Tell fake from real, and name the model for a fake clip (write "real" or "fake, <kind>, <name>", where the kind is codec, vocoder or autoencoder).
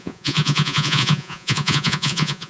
fake, vocoder, Vocos